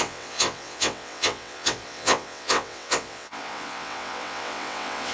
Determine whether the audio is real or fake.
fake